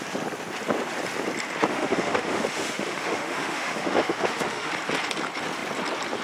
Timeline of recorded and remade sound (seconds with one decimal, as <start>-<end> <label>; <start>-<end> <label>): 0.0-1.7 recorded; 1.7-4.7 remade; 4.7-6.2 recorded